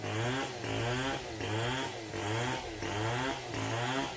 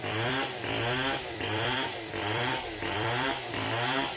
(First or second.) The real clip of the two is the first